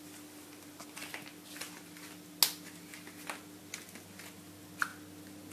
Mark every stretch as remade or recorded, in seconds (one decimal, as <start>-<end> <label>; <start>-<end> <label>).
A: 0.0-5.5 recorded